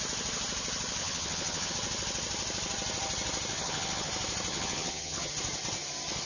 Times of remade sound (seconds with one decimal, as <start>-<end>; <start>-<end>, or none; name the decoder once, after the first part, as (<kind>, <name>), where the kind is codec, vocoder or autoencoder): 1.0-1.7 (vocoder, HiFi-GAN); 3.5-4.1; 4.5-5.3